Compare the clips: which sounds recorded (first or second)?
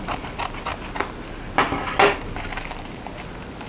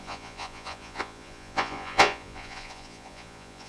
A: first